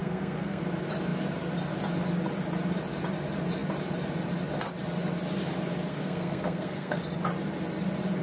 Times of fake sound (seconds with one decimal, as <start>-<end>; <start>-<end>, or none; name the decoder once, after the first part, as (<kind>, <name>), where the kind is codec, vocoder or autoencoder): 0.0-0.6 (codec, SNAC); 5.9-7.0